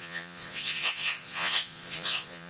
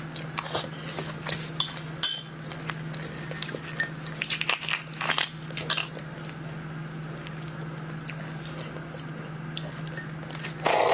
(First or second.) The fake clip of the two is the first